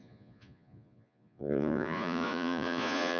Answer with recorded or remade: remade